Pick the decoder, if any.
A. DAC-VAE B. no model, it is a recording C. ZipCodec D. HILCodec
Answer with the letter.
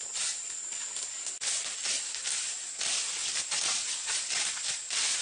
B